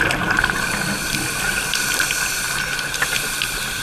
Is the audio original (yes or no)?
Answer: yes